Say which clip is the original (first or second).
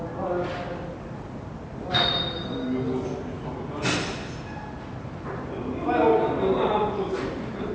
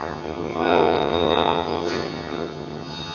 first